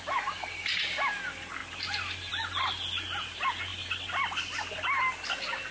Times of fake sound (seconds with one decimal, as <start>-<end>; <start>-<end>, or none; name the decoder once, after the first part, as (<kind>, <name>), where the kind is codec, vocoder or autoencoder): none